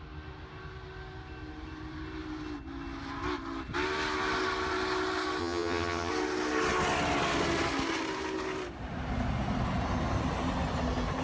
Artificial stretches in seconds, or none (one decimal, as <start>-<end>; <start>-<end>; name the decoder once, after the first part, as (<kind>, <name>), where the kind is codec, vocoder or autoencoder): 5.4-6.1 (vocoder, HiFi-GAN)